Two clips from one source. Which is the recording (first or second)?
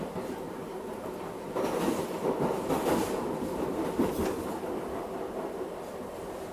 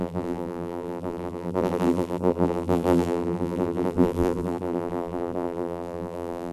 first